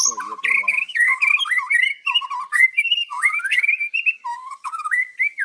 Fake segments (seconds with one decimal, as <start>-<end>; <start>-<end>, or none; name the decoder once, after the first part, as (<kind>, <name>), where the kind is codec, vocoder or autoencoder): 0.7-1.3 (codec, DAC); 2.5-3.7; 4.3-5.4